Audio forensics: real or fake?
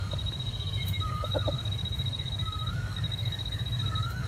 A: fake